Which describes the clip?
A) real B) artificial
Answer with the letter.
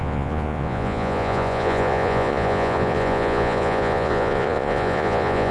B